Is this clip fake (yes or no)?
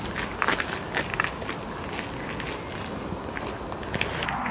no